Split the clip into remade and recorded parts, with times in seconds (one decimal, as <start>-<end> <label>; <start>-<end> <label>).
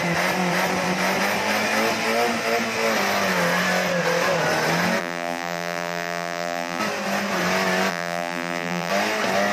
0.0-5.0 recorded; 5.0-6.8 remade; 6.8-7.9 recorded; 7.9-8.9 remade; 8.9-9.5 recorded